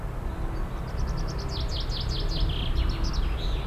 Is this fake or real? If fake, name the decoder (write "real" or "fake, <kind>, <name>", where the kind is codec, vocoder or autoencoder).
real